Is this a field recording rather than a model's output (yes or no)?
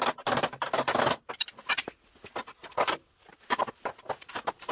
yes